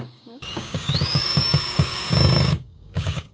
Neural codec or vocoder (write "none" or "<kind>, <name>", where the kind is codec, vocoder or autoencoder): codec, DAC